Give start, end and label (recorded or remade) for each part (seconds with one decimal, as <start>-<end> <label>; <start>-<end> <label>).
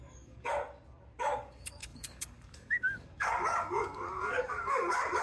0.0-0.6 remade; 0.6-1.2 recorded; 1.2-5.2 remade